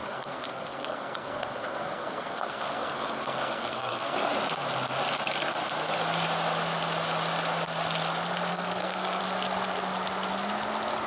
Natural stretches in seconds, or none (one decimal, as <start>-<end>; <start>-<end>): 4.3-8.5; 9.2-11.1